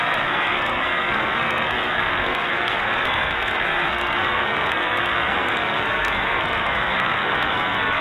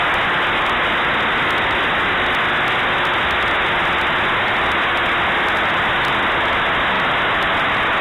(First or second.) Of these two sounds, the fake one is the first